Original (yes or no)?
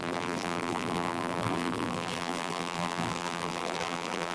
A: no